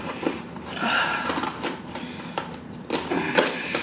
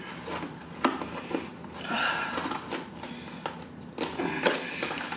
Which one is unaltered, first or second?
second